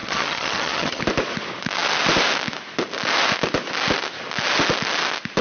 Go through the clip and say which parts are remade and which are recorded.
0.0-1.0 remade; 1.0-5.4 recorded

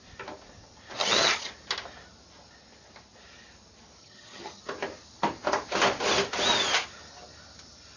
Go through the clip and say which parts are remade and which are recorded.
0.0-1.0 recorded; 1.0-1.5 remade; 1.5-4.0 recorded; 4.0-4.6 remade; 4.6-8.0 recorded